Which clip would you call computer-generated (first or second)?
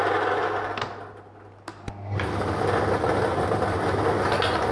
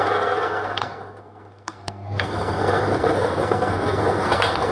second